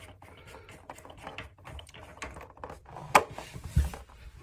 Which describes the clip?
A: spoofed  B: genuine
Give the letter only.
B